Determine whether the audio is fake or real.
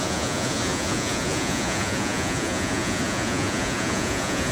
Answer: fake